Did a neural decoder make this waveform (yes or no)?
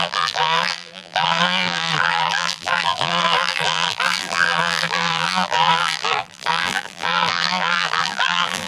yes